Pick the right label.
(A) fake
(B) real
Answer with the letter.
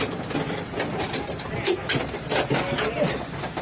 B